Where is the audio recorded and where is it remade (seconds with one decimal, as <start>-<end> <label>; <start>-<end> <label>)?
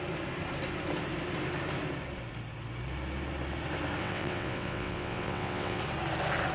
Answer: 0.0-4.0 recorded; 4.0-5.8 remade; 5.8-6.5 recorded